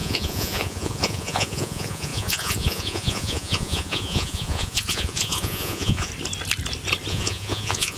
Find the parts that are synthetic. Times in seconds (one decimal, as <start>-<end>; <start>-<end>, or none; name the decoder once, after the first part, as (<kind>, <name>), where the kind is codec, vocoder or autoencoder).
0.0-6.1 (vocoder, Vocos); 7.1-8.0